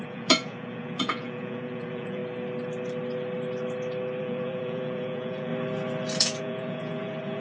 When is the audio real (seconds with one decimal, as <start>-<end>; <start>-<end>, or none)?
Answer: 2.2-4.2; 5.5-6.2